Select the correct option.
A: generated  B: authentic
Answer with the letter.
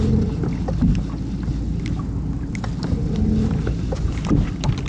B